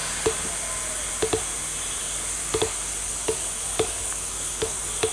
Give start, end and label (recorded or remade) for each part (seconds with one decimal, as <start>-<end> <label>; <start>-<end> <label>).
0.0-2.0 recorded; 2.0-5.1 remade